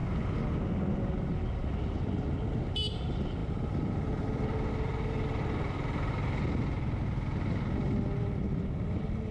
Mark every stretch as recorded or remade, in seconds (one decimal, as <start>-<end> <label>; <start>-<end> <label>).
0.0-3.4 recorded; 3.4-6.1 remade; 6.1-9.3 recorded